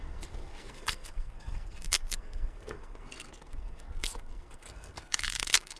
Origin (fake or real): fake